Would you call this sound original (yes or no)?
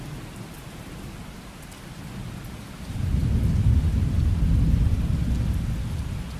yes